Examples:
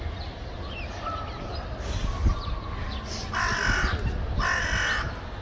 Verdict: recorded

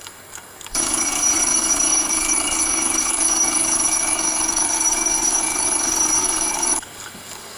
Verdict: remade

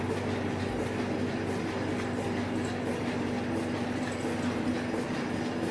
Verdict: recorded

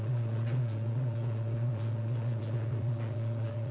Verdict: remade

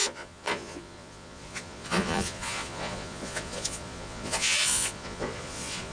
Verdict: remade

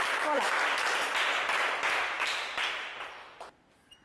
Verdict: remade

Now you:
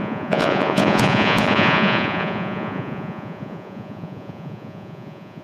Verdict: remade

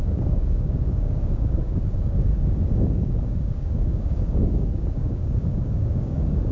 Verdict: remade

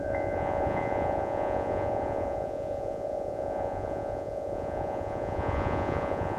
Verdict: remade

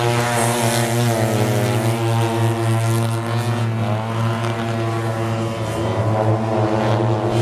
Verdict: recorded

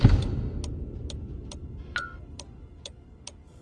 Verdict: recorded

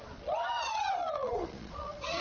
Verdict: remade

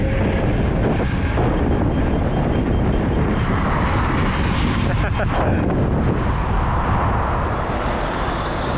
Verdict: recorded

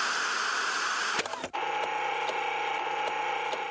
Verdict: recorded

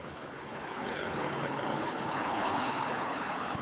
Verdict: remade